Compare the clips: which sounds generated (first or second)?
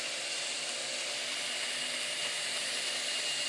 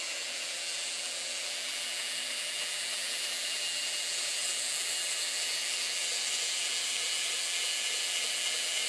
second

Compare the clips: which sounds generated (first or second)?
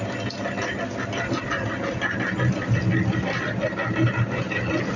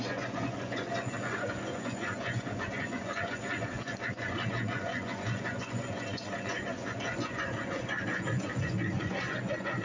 second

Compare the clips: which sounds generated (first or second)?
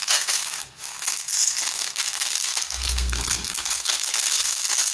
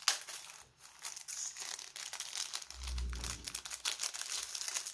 first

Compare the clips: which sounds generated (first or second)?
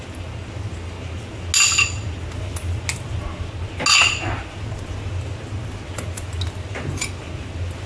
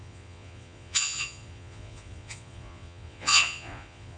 second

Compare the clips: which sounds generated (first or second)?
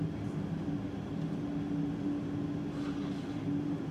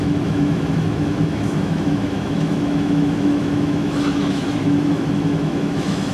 second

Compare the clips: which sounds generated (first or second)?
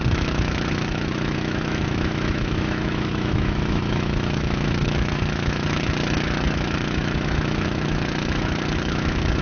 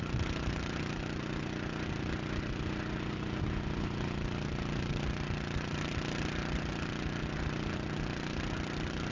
first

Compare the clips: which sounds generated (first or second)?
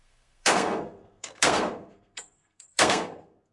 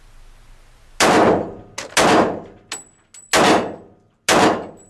first